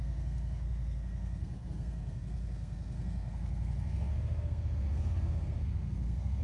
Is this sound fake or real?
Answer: fake